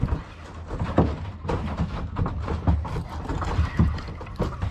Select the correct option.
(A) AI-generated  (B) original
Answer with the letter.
B